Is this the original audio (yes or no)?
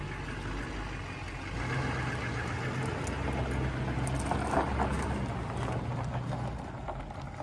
yes